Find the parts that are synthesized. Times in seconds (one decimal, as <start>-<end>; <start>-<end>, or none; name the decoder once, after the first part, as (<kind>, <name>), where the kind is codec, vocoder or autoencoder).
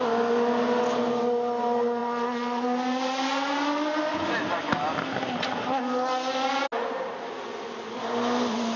none